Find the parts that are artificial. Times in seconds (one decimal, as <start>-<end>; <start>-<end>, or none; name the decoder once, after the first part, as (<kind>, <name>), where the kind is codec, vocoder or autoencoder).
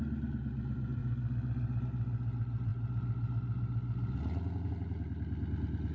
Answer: none